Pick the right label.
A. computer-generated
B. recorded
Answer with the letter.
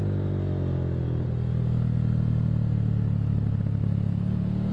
B